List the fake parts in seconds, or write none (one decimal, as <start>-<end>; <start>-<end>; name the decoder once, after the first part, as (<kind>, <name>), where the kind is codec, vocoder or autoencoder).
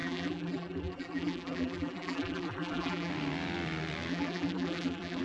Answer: 0.0-3.1 (vocoder, BigVGAN v2); 4.1-5.2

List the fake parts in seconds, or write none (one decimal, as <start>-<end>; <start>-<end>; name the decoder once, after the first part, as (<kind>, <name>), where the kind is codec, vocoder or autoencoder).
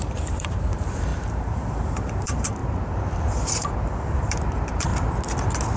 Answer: 0.0-2.6 (vocoder, BigVGAN v2); 4.2-4.9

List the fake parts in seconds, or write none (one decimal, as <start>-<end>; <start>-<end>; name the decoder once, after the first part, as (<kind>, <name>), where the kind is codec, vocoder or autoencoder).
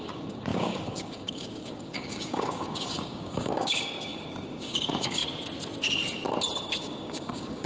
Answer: 0.0-5.2 (codec, DAC); 6.8-7.7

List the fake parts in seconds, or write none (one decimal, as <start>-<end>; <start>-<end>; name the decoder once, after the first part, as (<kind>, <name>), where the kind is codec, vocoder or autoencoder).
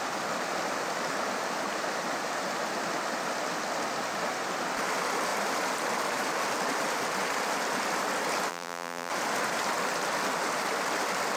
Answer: 8.5-9.1 (vocoder, BigVGAN v2)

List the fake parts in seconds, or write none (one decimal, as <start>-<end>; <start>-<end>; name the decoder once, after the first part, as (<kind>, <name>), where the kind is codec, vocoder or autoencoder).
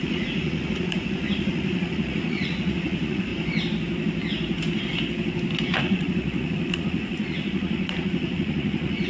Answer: 0.0-3.3 (vocoder, Vocos); 5.8-9.1